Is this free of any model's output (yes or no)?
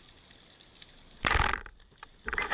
yes